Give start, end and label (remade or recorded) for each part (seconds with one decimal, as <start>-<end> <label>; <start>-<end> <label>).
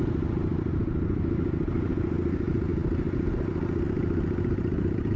0.0-5.2 recorded